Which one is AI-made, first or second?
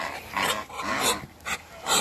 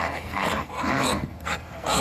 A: second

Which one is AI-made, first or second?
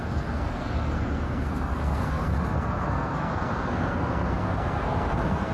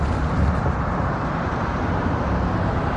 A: first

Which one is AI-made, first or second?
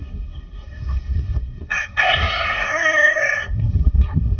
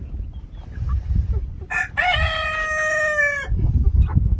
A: first